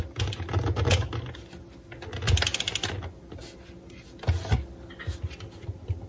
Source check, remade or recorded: recorded